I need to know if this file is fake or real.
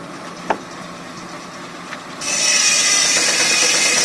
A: real